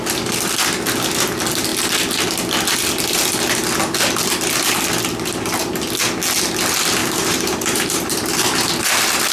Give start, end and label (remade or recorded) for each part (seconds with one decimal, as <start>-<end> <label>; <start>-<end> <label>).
0.0-7.0 recorded; 7.0-8.9 remade; 8.9-9.3 recorded